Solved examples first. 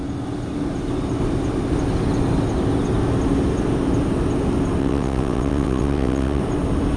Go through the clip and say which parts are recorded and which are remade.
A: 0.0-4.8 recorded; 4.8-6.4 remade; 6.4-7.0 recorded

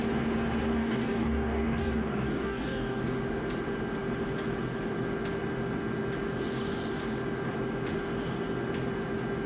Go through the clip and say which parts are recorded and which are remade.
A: 0.0-0.7 recorded; 0.7-3.0 remade; 3.0-9.5 recorded